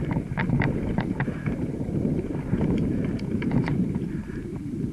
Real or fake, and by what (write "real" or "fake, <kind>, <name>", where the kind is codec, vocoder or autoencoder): fake, vocoder, BigVGAN v2